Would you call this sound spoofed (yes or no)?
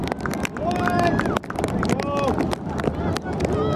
no